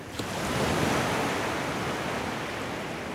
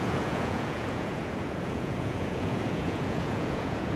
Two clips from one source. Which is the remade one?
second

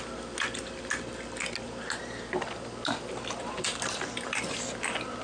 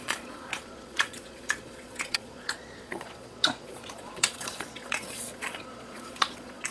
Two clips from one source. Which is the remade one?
second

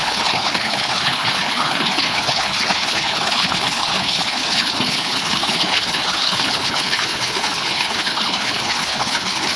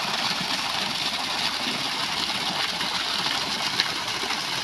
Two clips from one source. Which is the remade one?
first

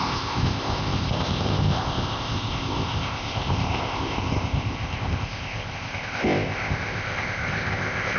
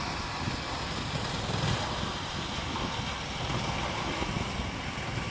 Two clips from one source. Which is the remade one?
first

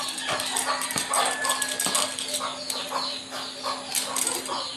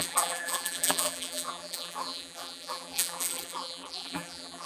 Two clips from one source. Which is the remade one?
second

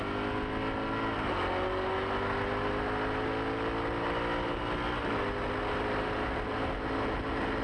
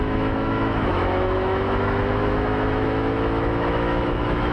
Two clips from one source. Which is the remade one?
second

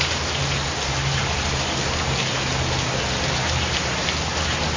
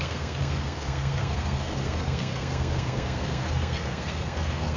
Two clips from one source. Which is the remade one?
second